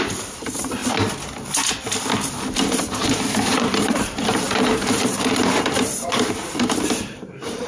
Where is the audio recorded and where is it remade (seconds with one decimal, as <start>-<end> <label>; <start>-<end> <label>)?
0.0-0.8 remade; 0.8-2.3 recorded; 2.3-7.7 remade